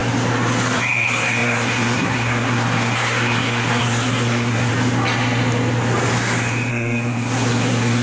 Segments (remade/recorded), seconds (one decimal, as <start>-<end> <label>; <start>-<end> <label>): 0.0-0.8 recorded; 0.8-4.7 remade; 4.7-6.7 recorded; 6.7-8.0 remade